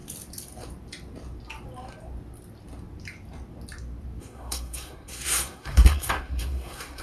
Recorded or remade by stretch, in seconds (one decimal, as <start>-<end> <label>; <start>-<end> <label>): 0.0-4.2 recorded; 4.2-7.0 remade

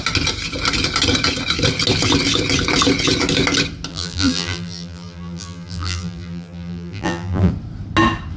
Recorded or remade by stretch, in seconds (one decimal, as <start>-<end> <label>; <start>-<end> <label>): 0.0-3.9 recorded; 3.9-7.5 remade; 7.5-8.4 recorded

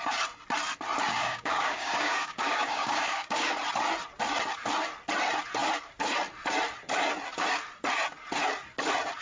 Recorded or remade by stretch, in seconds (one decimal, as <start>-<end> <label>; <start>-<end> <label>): 0.0-1.1 recorded; 1.1-3.5 remade; 3.5-9.2 recorded

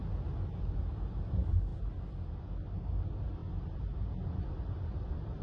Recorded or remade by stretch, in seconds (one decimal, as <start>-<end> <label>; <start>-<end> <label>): 0.0-0.6 recorded; 0.6-1.7 remade; 1.7-3.0 recorded; 3.0-5.4 remade

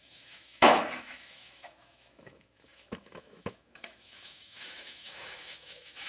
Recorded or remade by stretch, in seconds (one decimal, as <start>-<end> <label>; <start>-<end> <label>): 0.0-6.1 remade

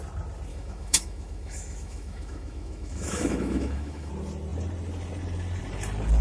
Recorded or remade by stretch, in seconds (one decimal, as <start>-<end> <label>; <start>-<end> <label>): 0.0-0.5 recorded; 0.5-4.1 remade; 4.1-6.2 recorded

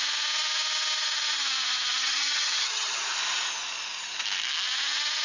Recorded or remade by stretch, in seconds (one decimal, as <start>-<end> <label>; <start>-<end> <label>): 0.0-2.0 recorded; 2.0-3.0 remade; 3.0-5.2 recorded